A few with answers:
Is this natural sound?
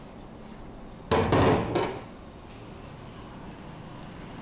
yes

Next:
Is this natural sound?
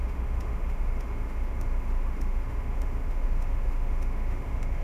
no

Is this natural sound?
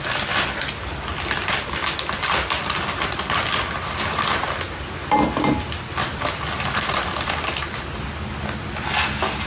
yes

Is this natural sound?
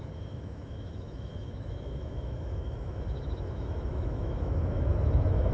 no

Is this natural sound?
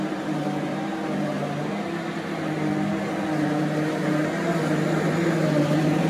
yes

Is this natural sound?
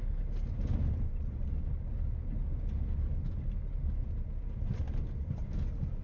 yes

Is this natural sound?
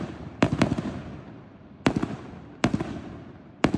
yes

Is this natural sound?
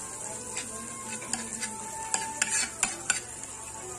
yes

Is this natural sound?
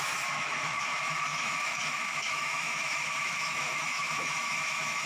no